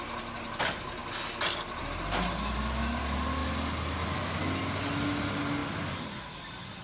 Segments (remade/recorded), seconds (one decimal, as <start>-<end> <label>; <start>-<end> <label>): 0.0-6.8 recorded